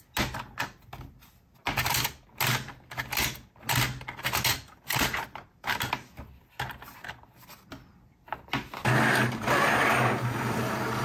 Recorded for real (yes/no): yes